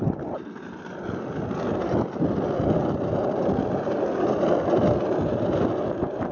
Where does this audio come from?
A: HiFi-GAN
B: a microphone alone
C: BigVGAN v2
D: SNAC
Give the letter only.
B